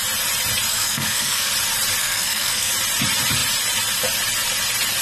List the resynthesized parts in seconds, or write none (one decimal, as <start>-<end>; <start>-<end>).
0.7-1.5; 2.0-2.7